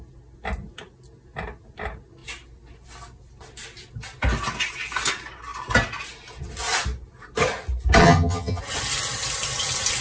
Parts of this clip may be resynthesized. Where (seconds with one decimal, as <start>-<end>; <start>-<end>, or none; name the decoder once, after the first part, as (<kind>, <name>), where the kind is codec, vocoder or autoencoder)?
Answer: 8.0-8.6 (vocoder, HiFi-GAN)